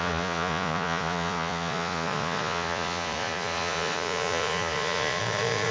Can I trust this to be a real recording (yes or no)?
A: no